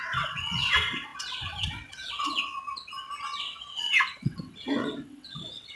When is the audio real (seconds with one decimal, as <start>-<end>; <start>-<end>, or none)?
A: 2.5-3.4